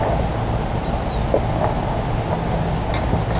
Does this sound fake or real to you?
real